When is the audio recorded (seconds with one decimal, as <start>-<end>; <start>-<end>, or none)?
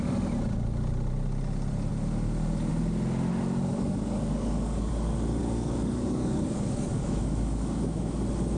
0.0-3.7; 4.9-5.4; 8.1-8.6